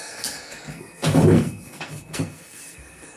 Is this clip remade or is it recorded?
remade